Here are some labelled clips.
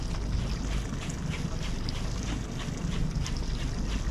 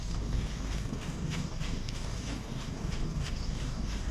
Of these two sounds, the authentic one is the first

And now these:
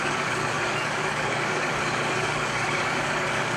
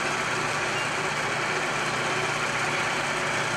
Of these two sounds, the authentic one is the second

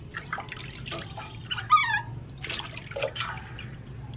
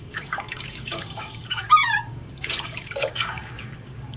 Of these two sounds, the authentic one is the first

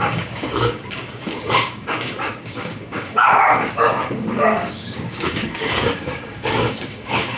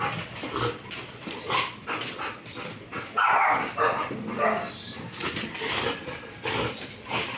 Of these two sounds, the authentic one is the second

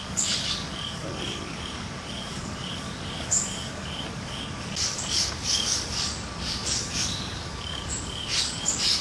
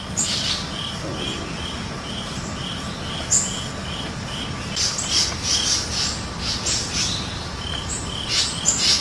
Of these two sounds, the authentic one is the second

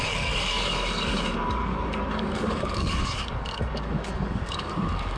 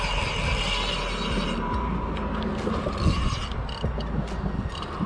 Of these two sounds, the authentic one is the second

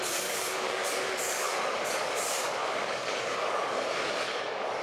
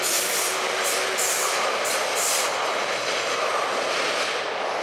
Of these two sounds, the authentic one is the second